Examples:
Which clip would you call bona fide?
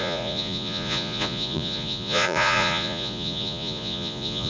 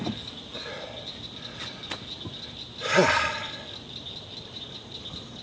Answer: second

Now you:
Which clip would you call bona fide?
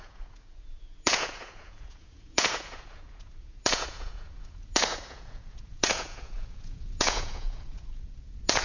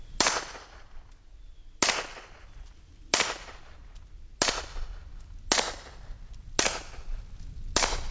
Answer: second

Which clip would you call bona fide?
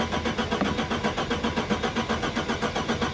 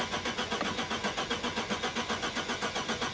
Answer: first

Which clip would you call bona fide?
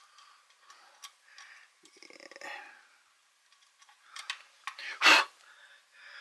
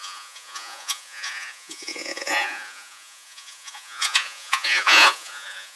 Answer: first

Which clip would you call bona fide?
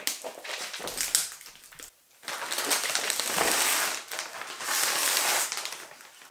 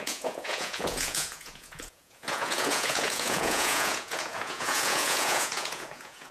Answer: first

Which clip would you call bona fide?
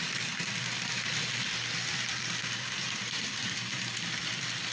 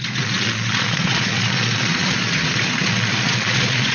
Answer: first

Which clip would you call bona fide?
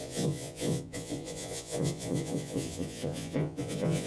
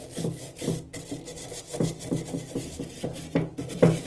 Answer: second